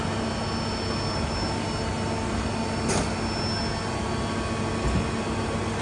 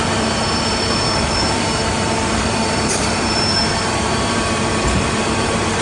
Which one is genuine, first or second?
first